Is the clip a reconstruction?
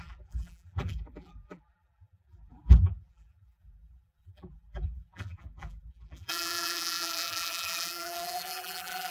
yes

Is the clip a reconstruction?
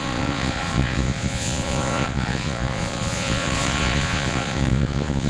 yes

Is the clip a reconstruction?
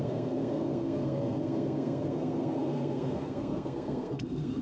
yes